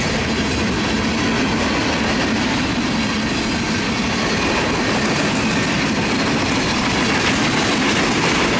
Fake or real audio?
real